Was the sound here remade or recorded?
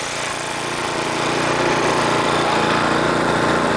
recorded